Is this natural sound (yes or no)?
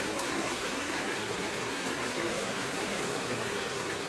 no